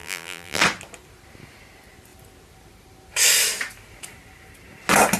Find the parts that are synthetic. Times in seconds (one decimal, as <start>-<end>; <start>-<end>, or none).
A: 0.0-0.6

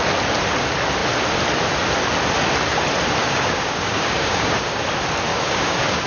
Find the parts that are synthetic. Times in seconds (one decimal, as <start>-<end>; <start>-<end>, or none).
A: 3.2-4.8; 5.3-6.1

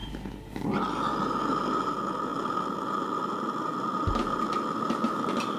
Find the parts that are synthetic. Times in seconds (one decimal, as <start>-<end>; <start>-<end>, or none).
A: 0.0-0.6

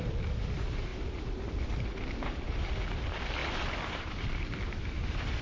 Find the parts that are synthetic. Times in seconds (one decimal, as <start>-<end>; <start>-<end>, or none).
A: 0.9-2.8; 3.4-5.4